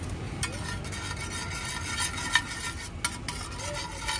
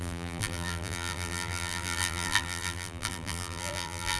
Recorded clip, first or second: first